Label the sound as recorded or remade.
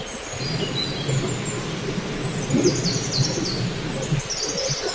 recorded